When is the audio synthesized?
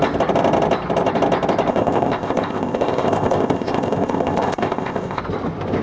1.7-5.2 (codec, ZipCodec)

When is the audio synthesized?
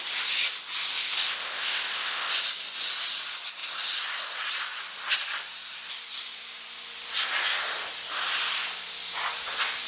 0.9-2.3 (codec, ZipCodec)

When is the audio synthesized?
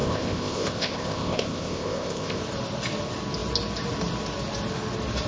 0.0-2.4 (codec, ZipCodec)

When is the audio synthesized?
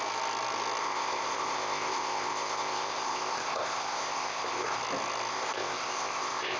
0.8-4.8 (codec, ZipCodec); 5.3-6.6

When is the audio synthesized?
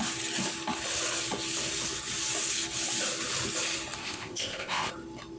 4.0-4.9 (codec, ZipCodec)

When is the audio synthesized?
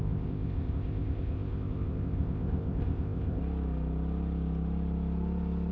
0.0-3.4 (codec, ZipCodec)